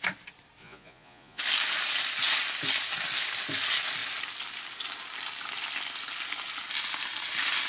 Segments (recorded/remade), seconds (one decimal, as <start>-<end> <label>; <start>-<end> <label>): 0.0-0.6 recorded; 0.6-1.4 remade; 1.4-7.7 recorded